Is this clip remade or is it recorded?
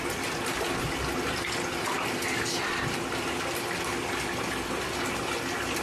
recorded